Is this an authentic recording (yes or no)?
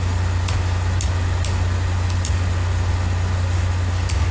yes